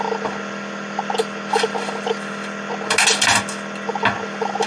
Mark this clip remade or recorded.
recorded